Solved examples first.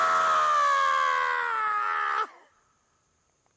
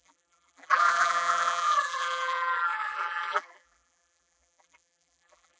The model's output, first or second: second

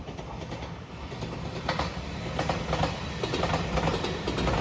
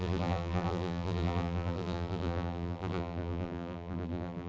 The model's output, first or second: second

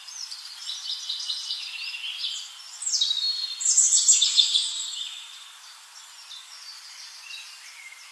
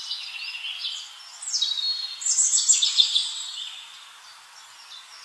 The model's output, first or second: first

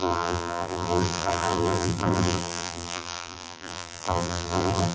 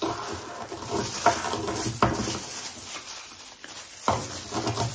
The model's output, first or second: first